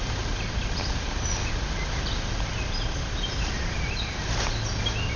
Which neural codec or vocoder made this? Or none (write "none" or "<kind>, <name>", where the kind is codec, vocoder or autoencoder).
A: none